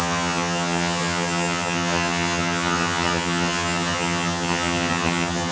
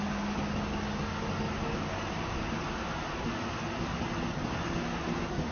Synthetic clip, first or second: first